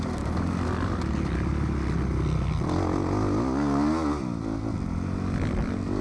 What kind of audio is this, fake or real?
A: real